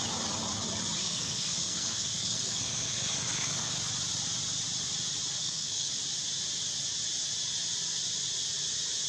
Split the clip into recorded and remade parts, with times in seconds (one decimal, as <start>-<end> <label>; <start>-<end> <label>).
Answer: 0.0-1.0 recorded; 1.0-3.7 remade; 3.7-5.4 recorded; 5.4-5.9 remade; 5.9-9.1 recorded